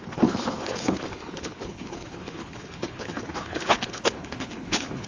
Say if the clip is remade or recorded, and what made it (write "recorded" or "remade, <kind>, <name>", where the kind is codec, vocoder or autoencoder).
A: remade, codec, HILCodec